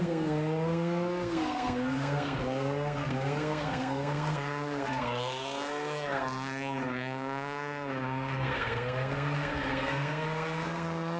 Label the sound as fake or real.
fake